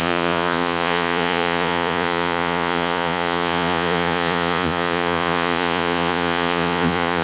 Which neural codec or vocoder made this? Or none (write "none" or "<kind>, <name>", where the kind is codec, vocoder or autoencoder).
vocoder, Vocos